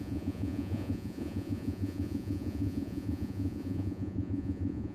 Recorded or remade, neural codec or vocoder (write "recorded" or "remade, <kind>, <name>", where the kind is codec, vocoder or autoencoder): remade, vocoder, Vocos